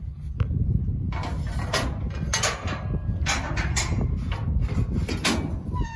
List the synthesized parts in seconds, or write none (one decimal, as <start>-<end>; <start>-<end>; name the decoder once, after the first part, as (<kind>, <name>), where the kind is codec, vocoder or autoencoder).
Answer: none